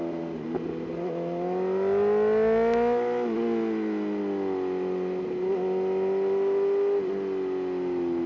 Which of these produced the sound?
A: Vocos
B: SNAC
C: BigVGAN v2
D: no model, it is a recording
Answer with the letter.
D